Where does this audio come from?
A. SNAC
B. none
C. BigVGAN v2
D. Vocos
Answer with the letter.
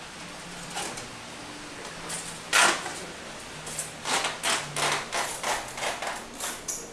B